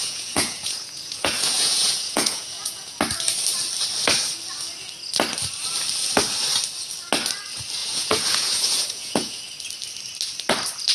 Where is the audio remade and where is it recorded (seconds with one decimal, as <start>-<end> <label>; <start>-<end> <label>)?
0.0-3.0 remade; 3.0-7.8 recorded; 7.8-9.5 remade; 9.5-10.9 recorded